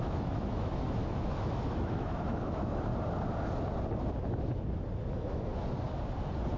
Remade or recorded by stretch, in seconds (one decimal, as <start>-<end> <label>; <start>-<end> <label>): 0.0-2.9 remade; 2.9-5.1 recorded; 5.1-5.5 remade; 5.5-6.6 recorded